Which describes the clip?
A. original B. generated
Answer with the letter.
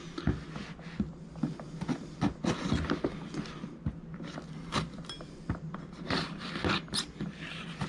A